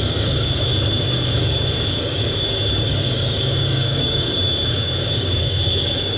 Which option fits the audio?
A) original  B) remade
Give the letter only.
B